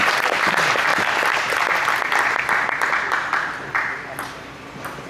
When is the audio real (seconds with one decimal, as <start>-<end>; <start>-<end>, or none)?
0.0-5.1